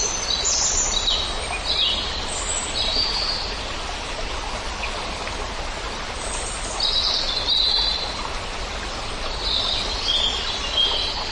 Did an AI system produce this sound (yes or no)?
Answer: no